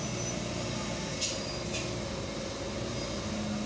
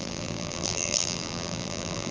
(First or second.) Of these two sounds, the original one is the first